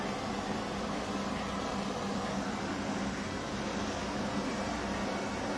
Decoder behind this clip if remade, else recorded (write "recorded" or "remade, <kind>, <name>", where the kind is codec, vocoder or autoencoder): recorded